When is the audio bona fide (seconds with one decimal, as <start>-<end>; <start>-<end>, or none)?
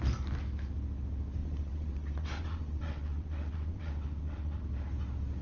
0.0-1.4; 4.6-5.4